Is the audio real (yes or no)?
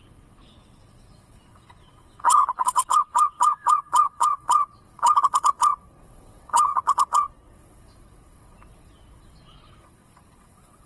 no